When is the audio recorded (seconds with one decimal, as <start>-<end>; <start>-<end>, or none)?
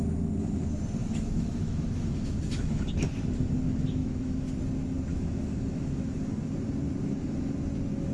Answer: 0.0-1.0; 2.9-4.0; 4.5-5.1; 6.1-8.1